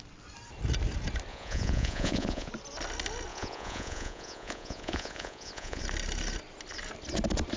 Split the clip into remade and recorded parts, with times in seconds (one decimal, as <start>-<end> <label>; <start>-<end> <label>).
0.0-1.3 recorded; 1.3-2.5 remade; 2.5-3.3 recorded; 3.3-5.8 remade; 5.8-7.6 recorded